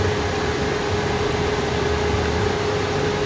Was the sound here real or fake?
real